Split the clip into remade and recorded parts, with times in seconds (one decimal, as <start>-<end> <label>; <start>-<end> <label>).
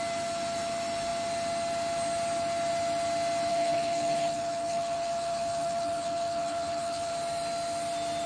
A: 0.0-3.5 recorded; 3.5-7.1 remade; 7.1-8.3 recorded